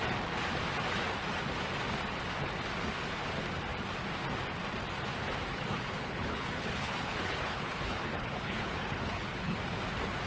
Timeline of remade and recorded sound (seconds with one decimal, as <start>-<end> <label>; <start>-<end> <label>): 0.0-5.5 recorded; 5.5-9.6 remade; 9.6-10.3 recorded